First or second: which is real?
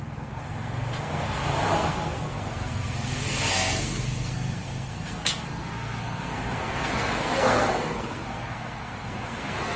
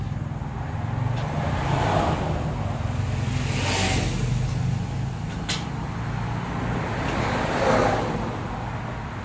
second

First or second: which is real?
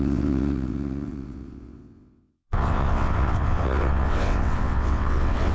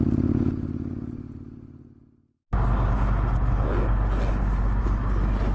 second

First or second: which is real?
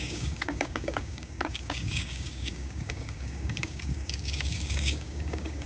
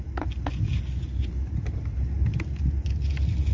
second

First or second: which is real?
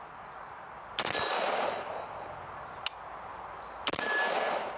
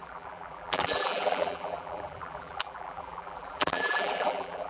first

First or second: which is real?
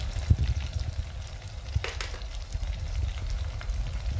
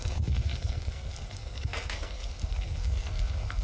first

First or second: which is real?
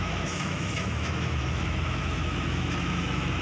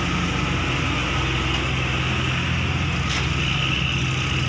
second